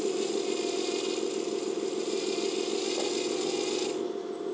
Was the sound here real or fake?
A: real